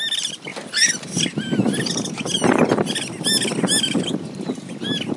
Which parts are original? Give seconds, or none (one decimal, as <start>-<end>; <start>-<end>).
0.0-5.2